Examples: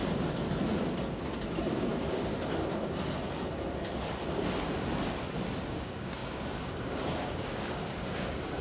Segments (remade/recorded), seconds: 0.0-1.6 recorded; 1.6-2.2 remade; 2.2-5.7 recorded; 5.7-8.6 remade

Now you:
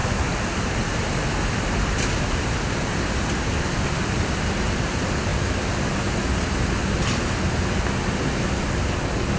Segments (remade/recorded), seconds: 0.0-1.1 remade; 1.1-9.4 recorded

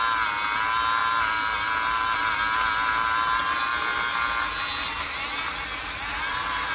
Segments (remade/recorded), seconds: 0.0-6.7 recorded

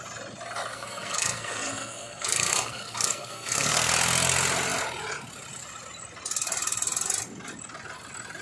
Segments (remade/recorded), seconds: 0.0-0.7 recorded; 0.7-3.9 remade; 3.9-8.4 recorded

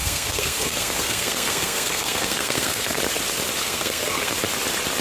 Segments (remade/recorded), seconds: 0.0-3.0 remade; 3.0-3.6 recorded; 3.6-4.3 remade; 4.3-5.0 recorded

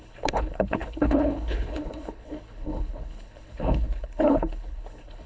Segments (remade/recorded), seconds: 0.0-5.3 remade